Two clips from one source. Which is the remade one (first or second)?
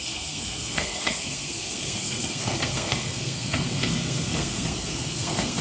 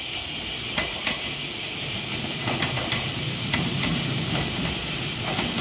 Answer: first